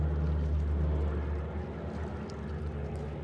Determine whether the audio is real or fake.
real